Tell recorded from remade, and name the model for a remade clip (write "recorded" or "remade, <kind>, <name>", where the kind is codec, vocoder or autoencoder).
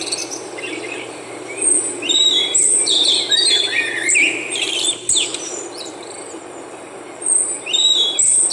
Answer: remade, vocoder, BigVGAN v2